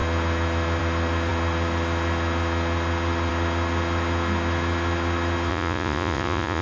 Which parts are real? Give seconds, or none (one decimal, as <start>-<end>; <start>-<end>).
0.0-5.5

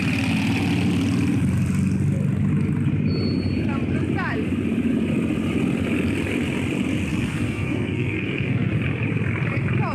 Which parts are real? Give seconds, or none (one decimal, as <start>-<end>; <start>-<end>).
0.0-7.1; 8.7-9.9